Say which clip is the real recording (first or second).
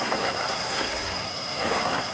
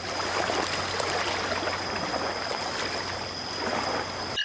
second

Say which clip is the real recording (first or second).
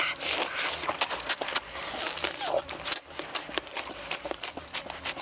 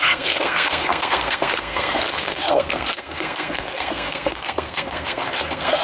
first